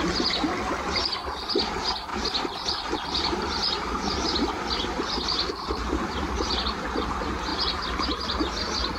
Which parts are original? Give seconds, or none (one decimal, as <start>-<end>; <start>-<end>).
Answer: 0.0-1.2; 1.7-2.1; 6.1-7.5; 8.0-9.0

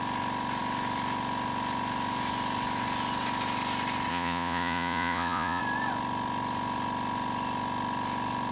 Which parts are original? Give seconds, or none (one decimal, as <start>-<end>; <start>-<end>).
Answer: 0.0-4.1; 5.6-8.5

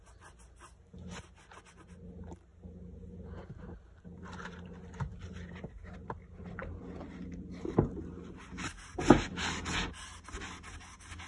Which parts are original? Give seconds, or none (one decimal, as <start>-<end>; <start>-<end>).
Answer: 0.0-11.3

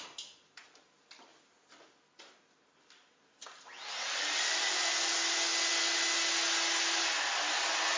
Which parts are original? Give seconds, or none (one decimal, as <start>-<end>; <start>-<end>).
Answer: 0.0-8.0

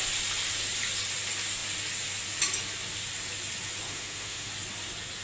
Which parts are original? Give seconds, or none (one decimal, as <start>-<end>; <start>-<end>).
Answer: 0.0-3.9; 4.5-5.2

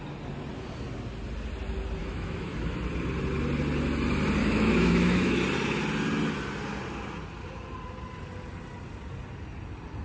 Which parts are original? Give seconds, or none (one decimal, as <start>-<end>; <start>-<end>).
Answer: 0.0-2.0; 2.8-4.4; 5.4-10.0

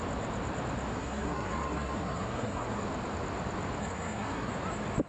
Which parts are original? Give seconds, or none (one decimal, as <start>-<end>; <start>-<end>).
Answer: 0.0-0.9; 2.8-3.8; 4.5-5.1